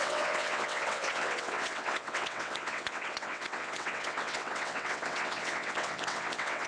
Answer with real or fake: fake